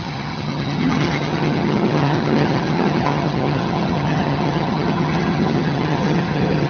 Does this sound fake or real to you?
fake